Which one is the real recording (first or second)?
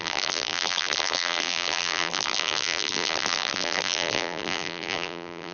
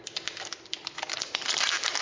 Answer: second